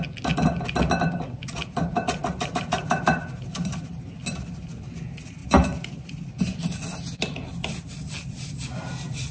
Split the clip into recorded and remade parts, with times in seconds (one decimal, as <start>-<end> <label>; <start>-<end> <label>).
0.0-9.3 recorded